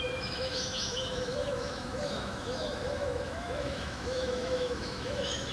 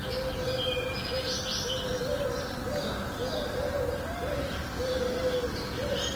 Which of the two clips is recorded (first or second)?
second